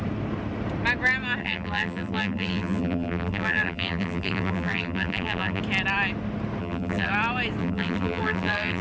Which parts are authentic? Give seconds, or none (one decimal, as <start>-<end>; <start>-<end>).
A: 0.0-1.4; 5.6-6.6; 7.1-7.6